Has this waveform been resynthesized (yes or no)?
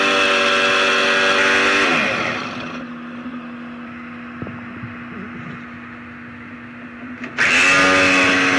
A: no